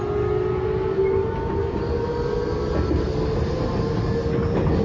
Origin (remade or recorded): recorded